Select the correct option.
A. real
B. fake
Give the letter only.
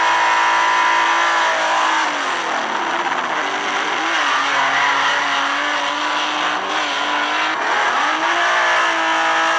A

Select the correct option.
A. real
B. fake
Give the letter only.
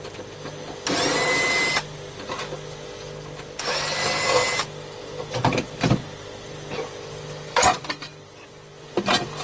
A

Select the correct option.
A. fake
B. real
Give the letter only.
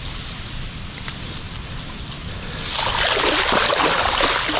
B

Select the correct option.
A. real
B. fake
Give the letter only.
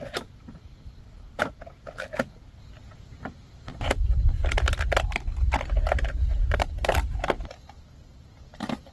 A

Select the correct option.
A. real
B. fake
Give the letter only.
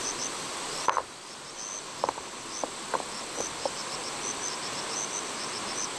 A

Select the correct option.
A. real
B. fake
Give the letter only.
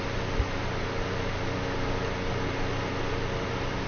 A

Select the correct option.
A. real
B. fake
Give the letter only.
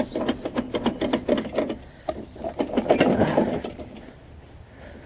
A